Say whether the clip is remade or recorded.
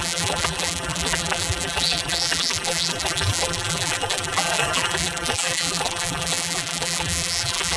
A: remade